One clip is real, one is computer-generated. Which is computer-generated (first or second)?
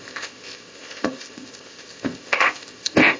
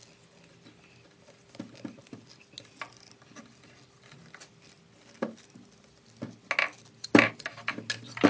first